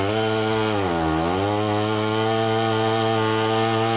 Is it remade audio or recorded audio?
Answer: recorded